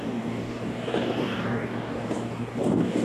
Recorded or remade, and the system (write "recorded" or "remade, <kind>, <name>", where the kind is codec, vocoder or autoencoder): remade, codec, DAC